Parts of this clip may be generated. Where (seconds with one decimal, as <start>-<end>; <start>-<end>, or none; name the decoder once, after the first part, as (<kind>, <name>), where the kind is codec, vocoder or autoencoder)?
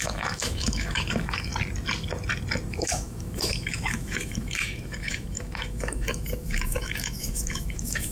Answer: 0.0-1.5 (autoencoder, DAC-VAE); 2.7-8.1